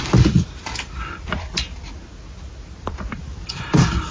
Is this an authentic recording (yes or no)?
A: yes